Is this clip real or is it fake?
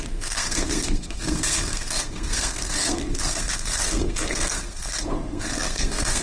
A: fake